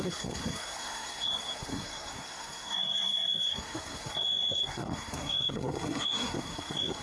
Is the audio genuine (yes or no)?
no